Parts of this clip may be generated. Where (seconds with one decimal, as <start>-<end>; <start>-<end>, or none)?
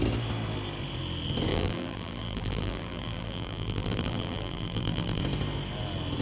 1.5-5.2